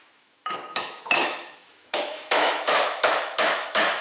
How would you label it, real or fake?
fake